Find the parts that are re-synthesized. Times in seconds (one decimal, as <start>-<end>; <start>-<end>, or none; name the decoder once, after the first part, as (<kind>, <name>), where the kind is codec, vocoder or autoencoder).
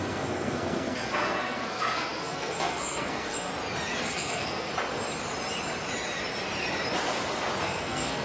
0.0-3.5 (codec, SNAC); 4.0-4.7; 7.6-8.2